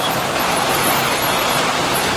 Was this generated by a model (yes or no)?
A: no